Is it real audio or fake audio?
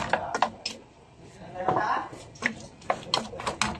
real